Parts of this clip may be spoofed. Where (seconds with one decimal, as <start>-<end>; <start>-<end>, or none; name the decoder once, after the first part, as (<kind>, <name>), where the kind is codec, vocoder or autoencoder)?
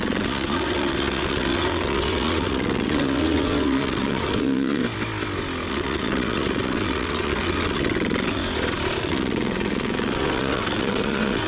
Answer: 0.0-4.8 (vocoder, WaveNeXt); 5.7-8.4; 9.0-11.5